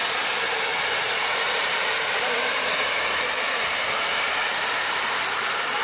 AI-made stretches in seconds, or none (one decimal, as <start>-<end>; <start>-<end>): 0.7-4.1

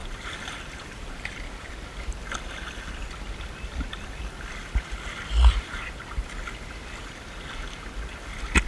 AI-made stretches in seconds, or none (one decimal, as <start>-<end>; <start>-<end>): 0.0-1.7

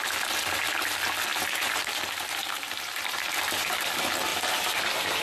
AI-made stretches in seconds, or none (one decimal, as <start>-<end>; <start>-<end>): 1.3-3.9; 4.3-5.2

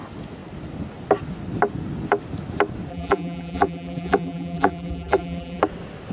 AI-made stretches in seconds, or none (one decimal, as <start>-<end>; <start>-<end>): 2.9-5.6